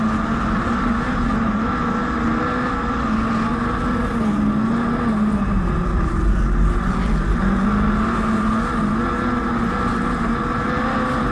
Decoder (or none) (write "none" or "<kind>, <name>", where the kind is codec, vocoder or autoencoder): none